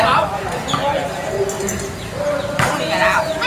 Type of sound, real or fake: real